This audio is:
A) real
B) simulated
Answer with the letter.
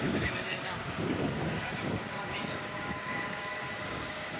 B